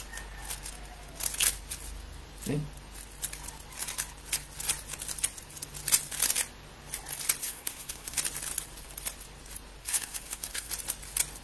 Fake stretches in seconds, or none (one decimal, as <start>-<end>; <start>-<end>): 7.4-8.2; 9.8-10.7